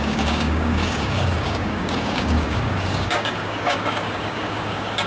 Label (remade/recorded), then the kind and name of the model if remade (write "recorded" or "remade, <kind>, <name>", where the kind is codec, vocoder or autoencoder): remade, codec, DAC